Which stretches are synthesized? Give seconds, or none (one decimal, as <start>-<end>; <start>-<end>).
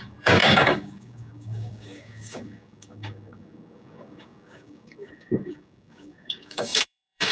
0.0-7.3